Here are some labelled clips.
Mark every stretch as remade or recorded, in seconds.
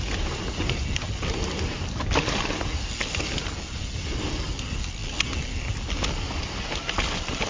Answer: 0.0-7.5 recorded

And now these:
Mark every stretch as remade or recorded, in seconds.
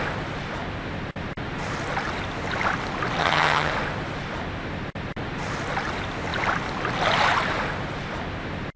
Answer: 0.0-3.2 recorded; 3.2-3.7 remade; 3.7-8.8 recorded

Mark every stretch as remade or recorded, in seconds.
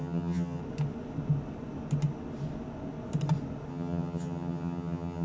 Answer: 0.0-0.6 remade; 0.6-3.7 recorded; 3.7-5.2 remade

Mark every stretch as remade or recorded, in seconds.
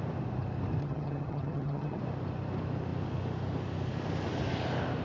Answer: 0.0-0.8 recorded; 0.8-2.0 remade; 2.0-5.0 recorded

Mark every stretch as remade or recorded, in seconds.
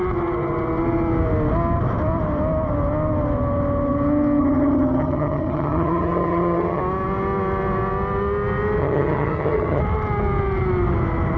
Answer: 0.0-4.4 recorded; 4.4-6.8 remade; 6.8-8.8 recorded; 8.8-9.8 remade; 9.8-11.4 recorded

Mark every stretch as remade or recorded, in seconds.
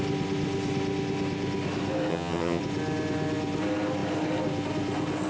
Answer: 0.0-2.1 recorded; 2.1-2.6 remade; 2.6-5.3 recorded